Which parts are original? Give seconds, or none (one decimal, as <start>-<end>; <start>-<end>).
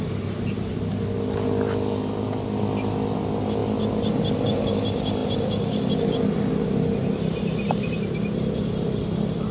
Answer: 0.0-9.5